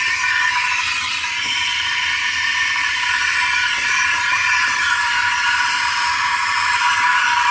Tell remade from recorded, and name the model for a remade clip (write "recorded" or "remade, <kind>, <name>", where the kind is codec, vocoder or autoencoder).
recorded